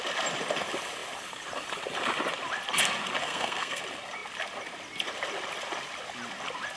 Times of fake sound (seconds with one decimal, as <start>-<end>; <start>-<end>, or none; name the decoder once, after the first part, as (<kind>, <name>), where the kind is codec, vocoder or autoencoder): 3.2-3.8 (codec, SNAC)